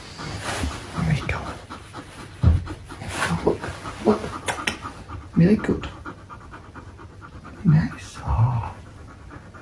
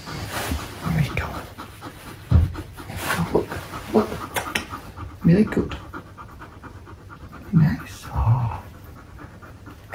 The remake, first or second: second